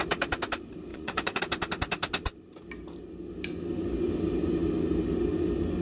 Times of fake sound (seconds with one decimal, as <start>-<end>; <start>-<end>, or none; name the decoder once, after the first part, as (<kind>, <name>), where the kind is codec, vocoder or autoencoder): 0.9-1.4 (vocoder, Vocos)